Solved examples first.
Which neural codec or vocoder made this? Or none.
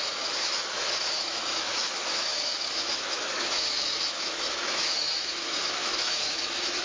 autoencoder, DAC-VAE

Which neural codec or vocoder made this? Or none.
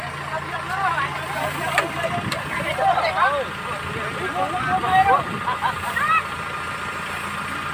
none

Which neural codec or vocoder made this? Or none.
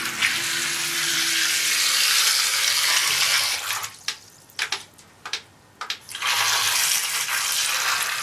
none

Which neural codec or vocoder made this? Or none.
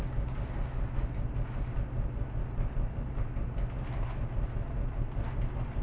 none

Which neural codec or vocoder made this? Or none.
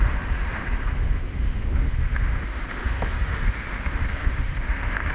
autoencoder, DAC-VAE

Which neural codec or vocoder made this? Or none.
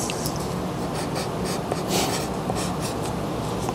none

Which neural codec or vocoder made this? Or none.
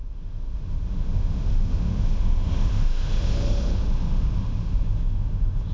autoencoder, DAC-VAE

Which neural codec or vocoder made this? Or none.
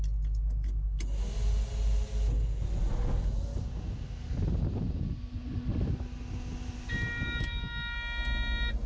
none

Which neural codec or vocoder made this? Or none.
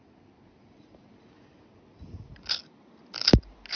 none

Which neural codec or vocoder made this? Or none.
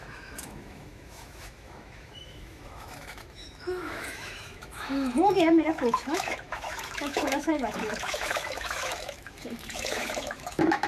autoencoder, DAC-VAE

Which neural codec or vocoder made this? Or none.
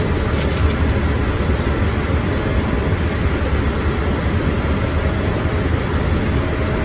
none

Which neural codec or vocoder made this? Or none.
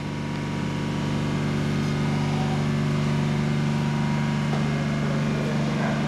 none